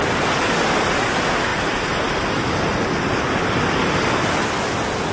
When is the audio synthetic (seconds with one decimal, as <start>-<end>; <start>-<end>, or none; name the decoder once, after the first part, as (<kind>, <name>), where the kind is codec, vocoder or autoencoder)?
none